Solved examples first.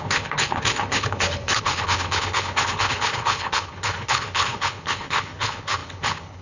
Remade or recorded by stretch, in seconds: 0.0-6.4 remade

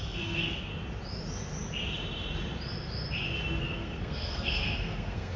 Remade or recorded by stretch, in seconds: 0.0-0.7 remade; 0.7-3.6 recorded; 3.6-5.4 remade

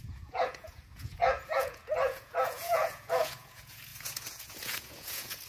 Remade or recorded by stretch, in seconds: 0.0-5.5 remade

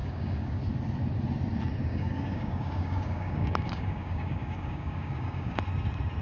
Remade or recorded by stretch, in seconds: 0.0-0.6 remade; 0.6-1.9 recorded; 1.9-5.6 remade; 5.6-6.2 recorded

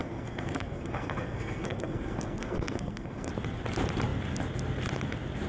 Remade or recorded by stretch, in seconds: 0.0-3.3 remade; 3.3-5.5 recorded